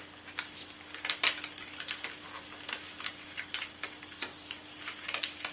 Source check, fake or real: real